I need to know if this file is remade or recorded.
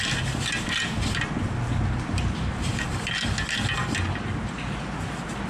recorded